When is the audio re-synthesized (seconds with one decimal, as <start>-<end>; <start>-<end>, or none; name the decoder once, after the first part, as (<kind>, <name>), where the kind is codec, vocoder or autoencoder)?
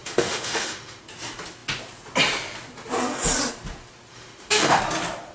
0.0-1.0 (autoencoder, DAC-VAE); 4.1-4.8